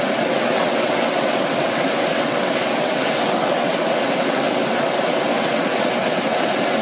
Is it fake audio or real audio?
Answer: fake